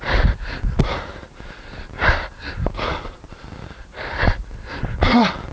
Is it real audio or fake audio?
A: real